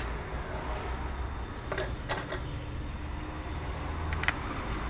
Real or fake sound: real